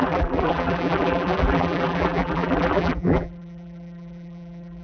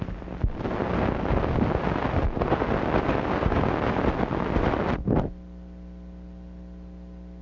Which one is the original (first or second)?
second